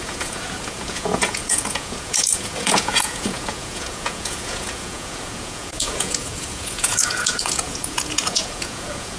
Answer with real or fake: fake